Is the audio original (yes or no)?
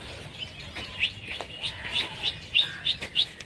yes